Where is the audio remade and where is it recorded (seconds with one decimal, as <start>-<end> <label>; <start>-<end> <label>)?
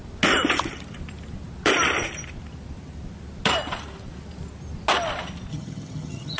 0.0-5.5 recorded; 5.5-6.4 remade